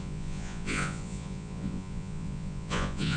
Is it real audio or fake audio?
fake